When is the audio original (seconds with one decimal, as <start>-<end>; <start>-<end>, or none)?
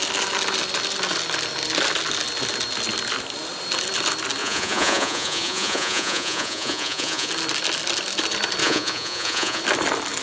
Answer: 0.0-4.4; 7.3-8.6; 9.6-10.2